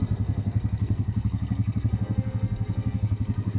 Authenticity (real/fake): fake